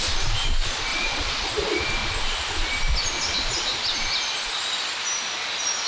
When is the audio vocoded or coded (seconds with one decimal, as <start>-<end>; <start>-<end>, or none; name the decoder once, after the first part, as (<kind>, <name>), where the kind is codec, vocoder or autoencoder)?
0.9-1.5 (vocoder, Vocos)